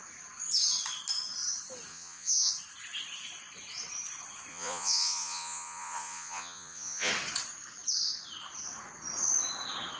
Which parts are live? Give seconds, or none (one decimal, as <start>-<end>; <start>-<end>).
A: 0.0-1.9; 2.5-4.5; 7.1-10.0